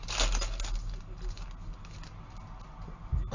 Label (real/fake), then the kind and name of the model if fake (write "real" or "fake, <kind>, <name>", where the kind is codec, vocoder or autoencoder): real